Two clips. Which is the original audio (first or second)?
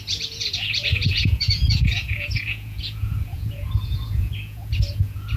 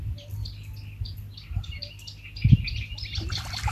second